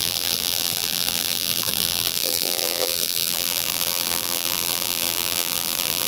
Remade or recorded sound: remade